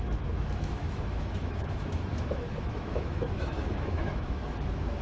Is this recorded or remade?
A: remade